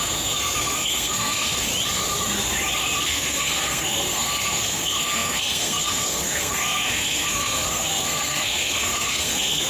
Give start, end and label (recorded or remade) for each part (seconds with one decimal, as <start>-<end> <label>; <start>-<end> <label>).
0.0-1.7 remade; 1.7-3.0 recorded; 3.0-9.7 remade